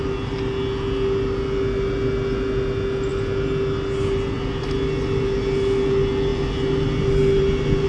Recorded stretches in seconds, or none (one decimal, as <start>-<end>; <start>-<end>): 0.0-7.9